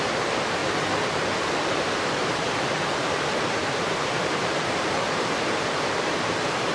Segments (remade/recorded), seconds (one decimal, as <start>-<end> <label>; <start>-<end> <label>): 0.0-6.7 remade